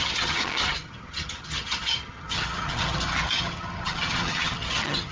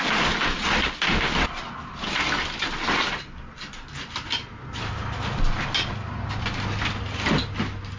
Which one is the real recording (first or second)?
second